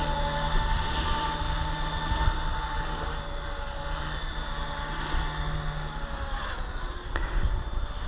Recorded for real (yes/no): yes